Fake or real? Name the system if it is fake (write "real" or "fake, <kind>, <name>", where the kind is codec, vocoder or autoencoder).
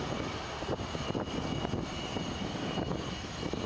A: real